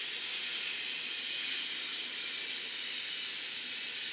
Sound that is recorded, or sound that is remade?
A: recorded